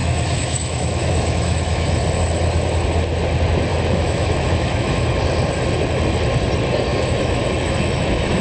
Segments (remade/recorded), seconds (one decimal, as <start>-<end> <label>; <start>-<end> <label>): 0.0-2.0 remade; 2.0-3.7 recorded; 3.7-5.2 remade; 5.2-6.9 recorded; 6.9-8.4 remade